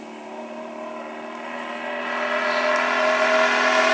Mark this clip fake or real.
real